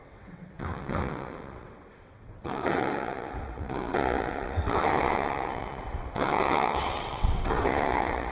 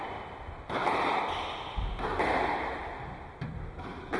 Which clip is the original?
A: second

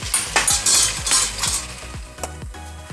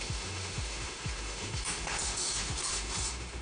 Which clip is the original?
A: first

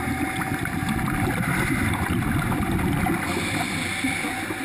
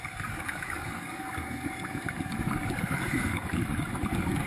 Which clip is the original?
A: first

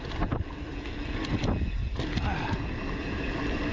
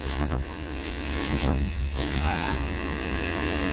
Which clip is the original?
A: first